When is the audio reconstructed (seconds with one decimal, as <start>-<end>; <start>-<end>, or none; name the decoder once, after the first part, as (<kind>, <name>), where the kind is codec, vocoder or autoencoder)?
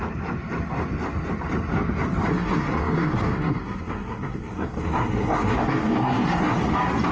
2.3-6.6 (codec, SNAC)